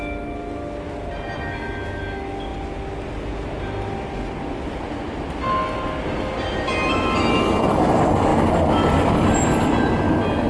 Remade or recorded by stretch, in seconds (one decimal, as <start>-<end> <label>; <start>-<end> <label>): 0.0-10.5 recorded